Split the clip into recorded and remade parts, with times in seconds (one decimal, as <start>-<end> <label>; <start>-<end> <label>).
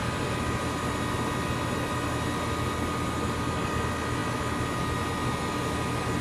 0.0-6.2 recorded